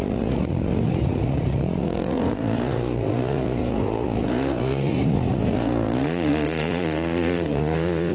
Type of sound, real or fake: fake